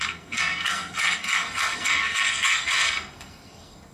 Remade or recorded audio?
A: remade